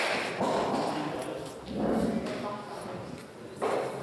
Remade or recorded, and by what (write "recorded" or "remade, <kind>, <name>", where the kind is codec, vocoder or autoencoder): recorded